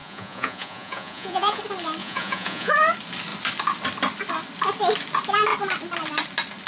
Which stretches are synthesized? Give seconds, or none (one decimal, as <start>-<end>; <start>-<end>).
0.0-1.6; 2.0-2.7